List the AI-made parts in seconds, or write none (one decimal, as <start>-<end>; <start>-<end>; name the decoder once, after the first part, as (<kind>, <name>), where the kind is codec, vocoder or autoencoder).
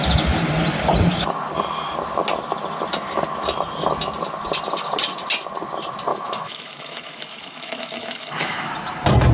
6.1-8.7 (autoencoder, DAC-VAE)